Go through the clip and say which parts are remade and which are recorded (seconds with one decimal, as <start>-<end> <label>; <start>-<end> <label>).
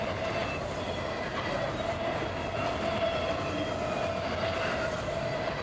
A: 0.0-5.6 recorded